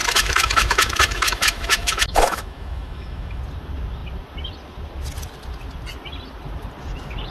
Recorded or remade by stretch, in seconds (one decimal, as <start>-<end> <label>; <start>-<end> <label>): 0.0-3.4 remade; 3.4-7.3 recorded

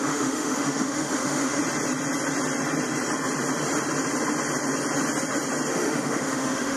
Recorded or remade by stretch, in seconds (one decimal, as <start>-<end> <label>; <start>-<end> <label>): 0.0-1.6 remade; 1.6-5.7 recorded; 5.7-6.8 remade

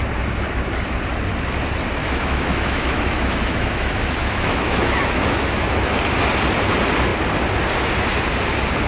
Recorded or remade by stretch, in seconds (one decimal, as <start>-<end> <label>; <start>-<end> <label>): 0.0-2.0 recorded; 2.0-5.9 remade; 5.9-8.9 recorded

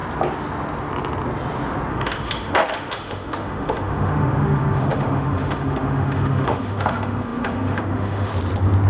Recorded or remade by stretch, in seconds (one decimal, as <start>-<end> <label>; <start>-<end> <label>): 0.0-1.9 recorded; 1.9-8.3 remade; 8.3-8.9 recorded